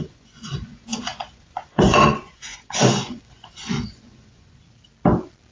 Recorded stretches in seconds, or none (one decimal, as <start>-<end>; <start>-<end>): 4.6-5.5